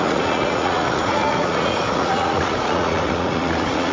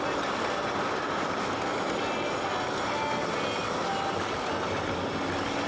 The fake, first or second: first